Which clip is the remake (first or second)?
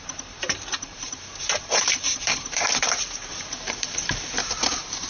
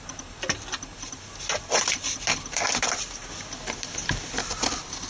first